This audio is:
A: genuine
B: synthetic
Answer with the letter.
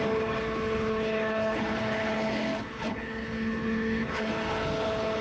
B